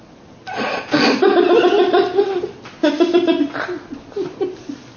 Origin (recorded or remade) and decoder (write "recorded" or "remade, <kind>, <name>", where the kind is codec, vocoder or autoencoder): recorded